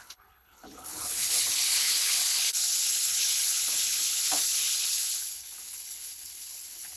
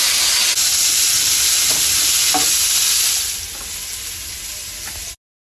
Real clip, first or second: second